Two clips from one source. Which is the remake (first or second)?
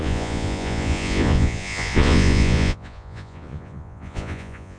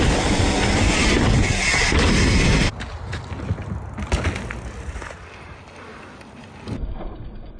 first